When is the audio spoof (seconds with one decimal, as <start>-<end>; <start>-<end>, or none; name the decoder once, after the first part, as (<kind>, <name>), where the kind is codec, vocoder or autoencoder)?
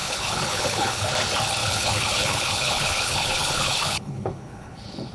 0.0-1.1 (codec, HILCodec); 1.6-5.1